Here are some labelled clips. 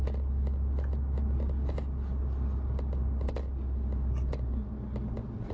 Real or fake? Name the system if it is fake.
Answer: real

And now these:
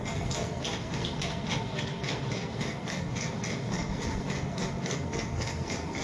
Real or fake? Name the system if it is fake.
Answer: fake, codec, SNAC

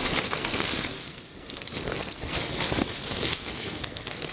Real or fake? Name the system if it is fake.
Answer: fake, codec, SNAC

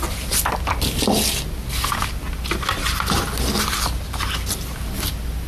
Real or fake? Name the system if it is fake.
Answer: real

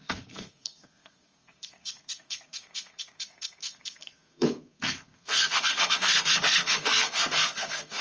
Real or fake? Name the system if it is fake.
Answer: fake, codec, SNAC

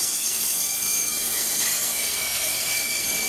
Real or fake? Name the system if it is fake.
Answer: fake, codec, SNAC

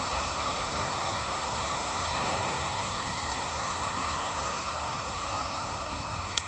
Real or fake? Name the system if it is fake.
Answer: fake, codec, SNAC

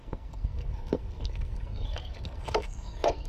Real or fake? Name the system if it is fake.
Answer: fake, codec, SNAC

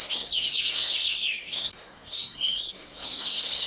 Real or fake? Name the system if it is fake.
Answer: fake, codec, SNAC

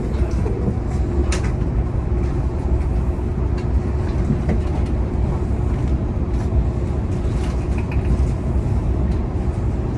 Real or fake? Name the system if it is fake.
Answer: real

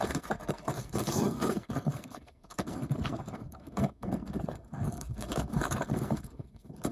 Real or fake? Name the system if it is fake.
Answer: fake, codec, SNAC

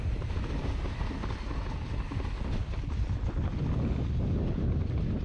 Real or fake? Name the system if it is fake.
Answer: real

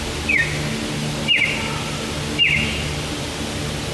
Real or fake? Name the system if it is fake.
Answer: real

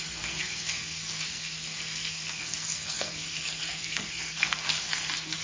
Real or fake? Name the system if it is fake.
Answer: fake, codec, SNAC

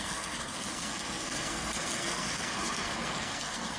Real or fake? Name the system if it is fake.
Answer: fake, codec, SNAC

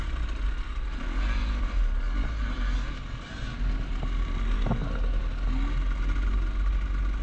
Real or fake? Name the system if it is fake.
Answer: real